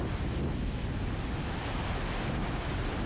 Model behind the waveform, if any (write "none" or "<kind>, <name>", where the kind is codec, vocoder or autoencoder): none